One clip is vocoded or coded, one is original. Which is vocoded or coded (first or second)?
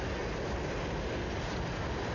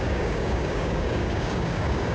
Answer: second